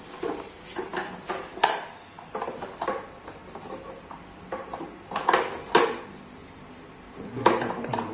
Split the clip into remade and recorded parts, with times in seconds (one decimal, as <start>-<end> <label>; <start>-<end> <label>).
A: 0.0-6.4 recorded; 6.4-7.3 remade; 7.3-8.1 recorded